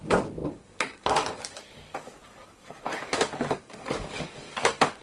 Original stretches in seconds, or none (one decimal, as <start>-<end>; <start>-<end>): none